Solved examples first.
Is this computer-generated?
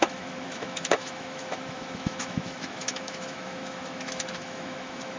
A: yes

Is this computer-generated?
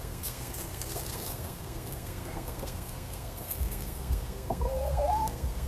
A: yes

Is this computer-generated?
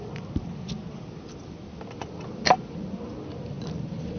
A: no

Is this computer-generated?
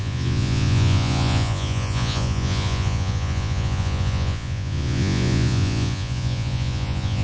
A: yes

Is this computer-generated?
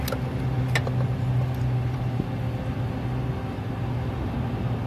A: no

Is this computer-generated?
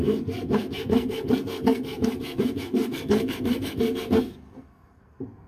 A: yes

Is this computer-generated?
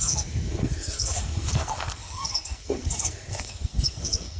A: yes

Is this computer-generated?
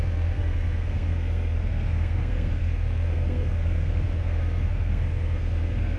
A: yes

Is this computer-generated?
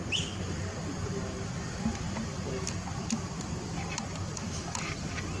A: no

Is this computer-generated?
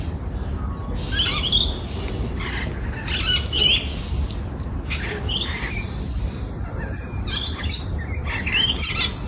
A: no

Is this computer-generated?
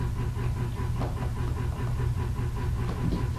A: no